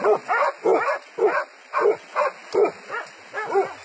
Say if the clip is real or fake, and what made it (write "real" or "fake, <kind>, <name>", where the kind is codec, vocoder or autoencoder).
real